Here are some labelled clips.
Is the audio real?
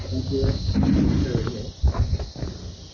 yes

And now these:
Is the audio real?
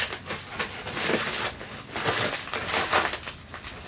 yes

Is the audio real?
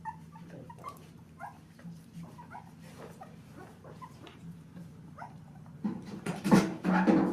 no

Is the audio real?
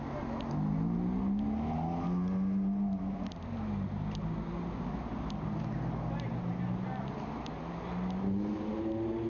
yes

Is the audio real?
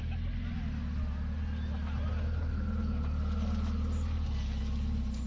yes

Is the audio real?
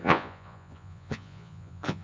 no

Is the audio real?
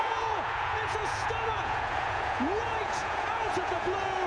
no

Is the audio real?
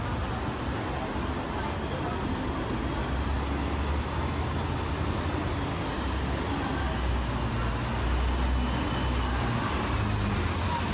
yes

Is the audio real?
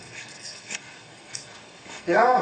no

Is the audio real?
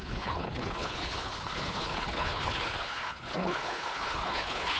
no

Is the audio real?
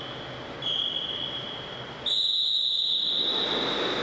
yes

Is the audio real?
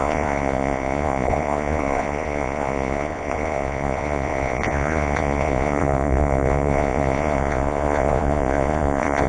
no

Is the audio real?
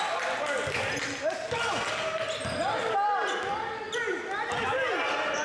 yes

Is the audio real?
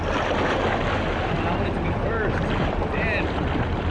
yes